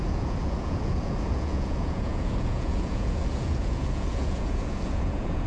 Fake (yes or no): yes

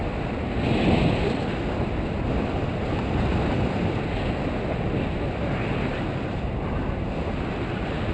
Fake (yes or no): no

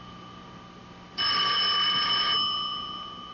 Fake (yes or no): no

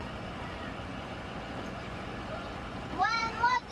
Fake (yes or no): yes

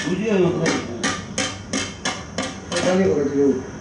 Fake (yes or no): no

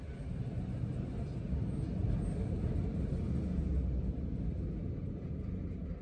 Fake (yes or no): no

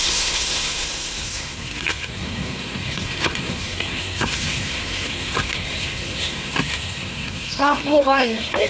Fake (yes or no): yes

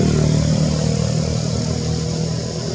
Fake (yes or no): no